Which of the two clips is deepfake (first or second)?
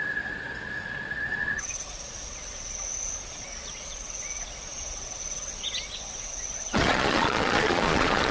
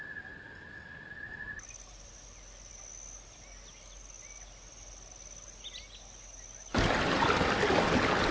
first